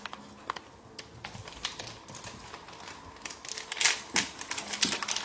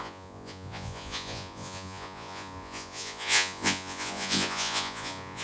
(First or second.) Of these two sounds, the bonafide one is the first